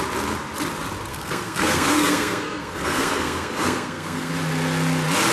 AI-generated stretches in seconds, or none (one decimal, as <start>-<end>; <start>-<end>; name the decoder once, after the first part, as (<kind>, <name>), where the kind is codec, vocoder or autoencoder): 1.1-4.3 (codec, SNAC)